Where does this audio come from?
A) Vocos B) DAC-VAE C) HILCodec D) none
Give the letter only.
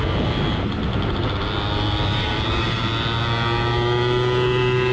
D